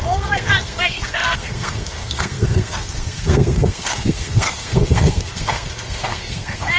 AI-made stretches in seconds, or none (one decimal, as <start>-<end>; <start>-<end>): 0.0-6.8